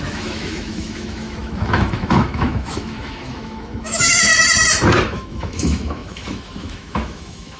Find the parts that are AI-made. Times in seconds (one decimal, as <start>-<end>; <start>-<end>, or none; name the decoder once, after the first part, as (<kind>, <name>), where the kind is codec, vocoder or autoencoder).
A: 0.0-4.3 (autoencoder, DAC-VAE); 5.0-7.6